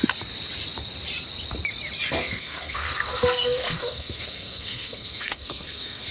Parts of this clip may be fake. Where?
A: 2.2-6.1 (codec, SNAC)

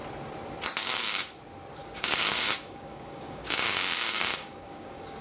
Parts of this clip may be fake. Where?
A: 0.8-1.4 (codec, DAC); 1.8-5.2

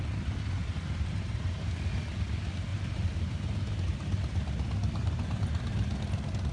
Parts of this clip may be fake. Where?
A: 0.6-1.6 (vocoder, BigVGAN v2); 2.7-3.8

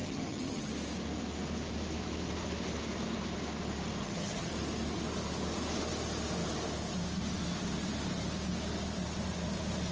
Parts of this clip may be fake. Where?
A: 0.0-0.7 (vocoder, HiFi-GAN); 4.0-4.5

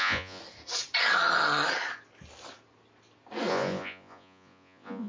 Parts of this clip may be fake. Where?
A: 0.0-0.4 (vocoder, Vocos); 3.5-5.1